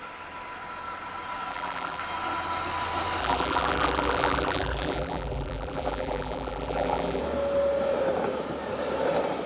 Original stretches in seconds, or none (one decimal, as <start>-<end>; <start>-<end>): 0.0-1.5; 2.0-3.2; 7.2-9.5